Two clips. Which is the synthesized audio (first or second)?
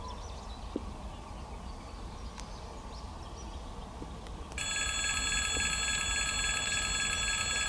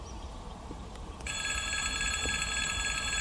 second